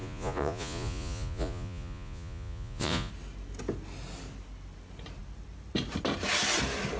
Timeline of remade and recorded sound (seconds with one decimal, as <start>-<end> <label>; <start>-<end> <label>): 0.0-3.1 remade; 3.1-7.0 recorded